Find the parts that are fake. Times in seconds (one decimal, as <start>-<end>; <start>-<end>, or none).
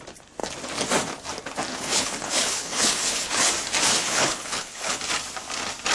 1.7-3.5; 3.9-5.0